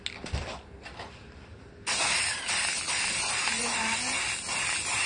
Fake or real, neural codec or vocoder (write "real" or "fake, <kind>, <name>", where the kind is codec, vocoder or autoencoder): real